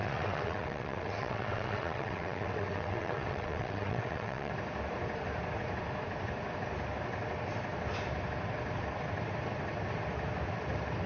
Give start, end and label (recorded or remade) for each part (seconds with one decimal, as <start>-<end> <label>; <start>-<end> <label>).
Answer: 0.0-4.5 remade; 4.5-11.1 recorded